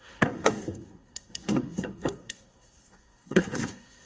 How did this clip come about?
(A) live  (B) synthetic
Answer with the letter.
B